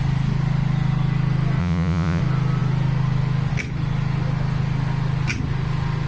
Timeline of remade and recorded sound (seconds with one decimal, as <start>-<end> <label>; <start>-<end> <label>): 0.0-1.6 recorded; 1.6-2.2 remade; 2.2-6.1 recorded